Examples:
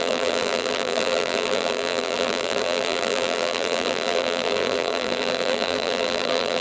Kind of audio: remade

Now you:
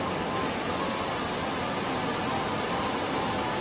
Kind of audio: recorded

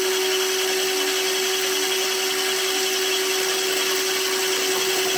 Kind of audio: recorded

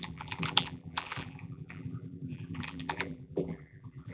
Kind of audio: remade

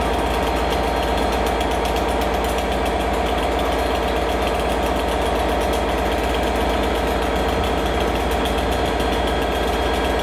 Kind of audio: recorded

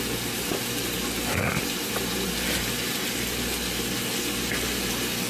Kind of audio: recorded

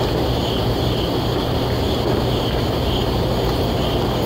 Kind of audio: recorded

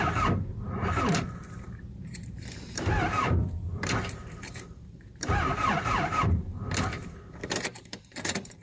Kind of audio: remade